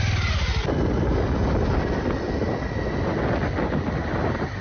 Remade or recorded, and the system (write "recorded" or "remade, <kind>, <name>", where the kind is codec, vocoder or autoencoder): recorded